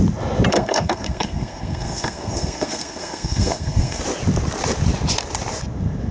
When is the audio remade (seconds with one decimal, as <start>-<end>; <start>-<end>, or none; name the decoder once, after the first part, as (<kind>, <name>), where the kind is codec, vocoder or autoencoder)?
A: 0.5-4.0 (codec, SNAC)